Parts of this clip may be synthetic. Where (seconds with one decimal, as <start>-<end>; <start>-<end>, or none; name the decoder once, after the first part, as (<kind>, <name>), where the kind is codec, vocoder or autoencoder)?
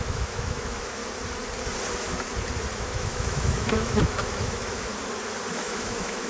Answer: 0.0-1.0 (autoencoder, DAC-VAE); 2.8-4.9; 5.5-6.3